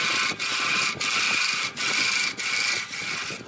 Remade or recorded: recorded